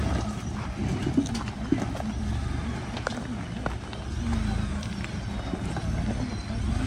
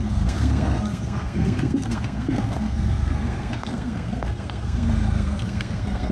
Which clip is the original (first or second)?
first